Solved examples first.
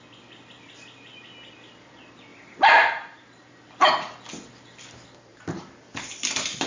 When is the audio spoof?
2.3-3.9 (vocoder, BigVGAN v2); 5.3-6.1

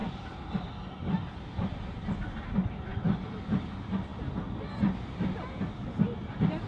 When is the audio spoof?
0.0-0.7 (vocoder, BigVGAN v2)